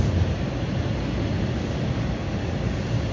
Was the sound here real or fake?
real